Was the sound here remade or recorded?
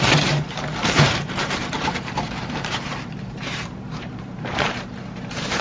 remade